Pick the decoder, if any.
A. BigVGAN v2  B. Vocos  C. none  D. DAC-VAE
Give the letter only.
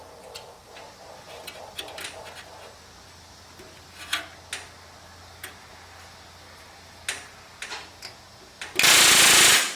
C